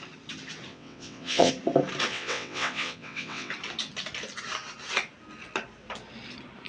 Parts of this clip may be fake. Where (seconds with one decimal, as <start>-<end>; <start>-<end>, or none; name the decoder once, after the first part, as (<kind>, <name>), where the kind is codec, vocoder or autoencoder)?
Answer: 0.7-1.5 (vocoder, WaveNeXt); 2.1-3.5